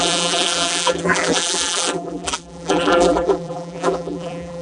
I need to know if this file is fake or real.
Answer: fake